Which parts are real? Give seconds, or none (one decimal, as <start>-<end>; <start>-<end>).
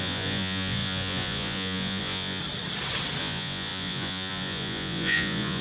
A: 2.4-3.2